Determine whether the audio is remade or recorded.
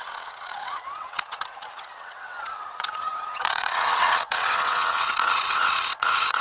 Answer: remade